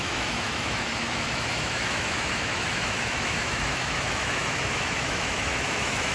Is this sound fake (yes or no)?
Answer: yes